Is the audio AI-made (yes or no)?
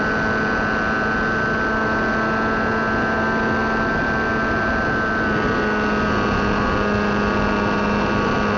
no